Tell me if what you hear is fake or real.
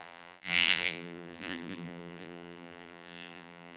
fake